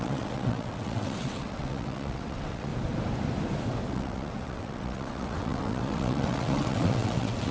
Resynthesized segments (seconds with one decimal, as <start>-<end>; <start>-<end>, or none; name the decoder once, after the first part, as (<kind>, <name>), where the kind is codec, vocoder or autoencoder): 0.0-2.7 (vocoder, WaveNeXt); 3.9-7.5